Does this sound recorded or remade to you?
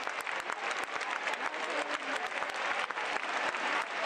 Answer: recorded